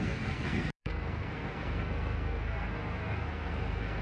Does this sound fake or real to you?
fake